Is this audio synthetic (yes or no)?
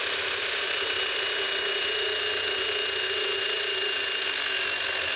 no